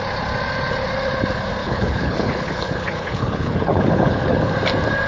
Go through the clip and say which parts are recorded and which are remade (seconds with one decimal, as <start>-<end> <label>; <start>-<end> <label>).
0.0-1.6 recorded; 1.6-4.5 remade; 4.5-5.1 recorded